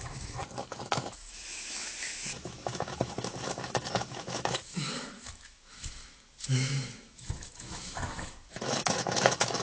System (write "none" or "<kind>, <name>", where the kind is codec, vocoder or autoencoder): autoencoder, DAC-VAE